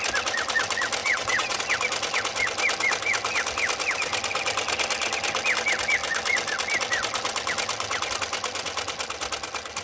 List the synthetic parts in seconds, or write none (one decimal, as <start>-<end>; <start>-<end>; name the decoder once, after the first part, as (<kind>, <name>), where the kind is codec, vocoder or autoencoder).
1.0-1.6 (vocoder, WaveNeXt)